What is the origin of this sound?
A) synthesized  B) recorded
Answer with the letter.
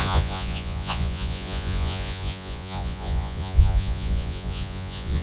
A